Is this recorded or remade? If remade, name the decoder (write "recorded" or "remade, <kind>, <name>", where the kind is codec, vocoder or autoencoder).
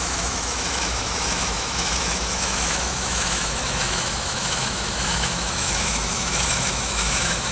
remade, autoencoder, DAC-VAE